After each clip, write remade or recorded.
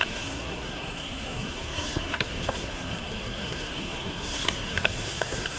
remade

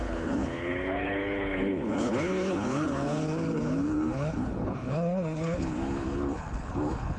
remade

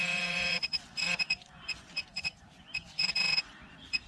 remade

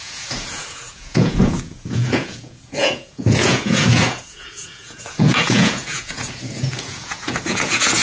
remade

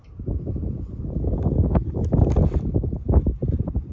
recorded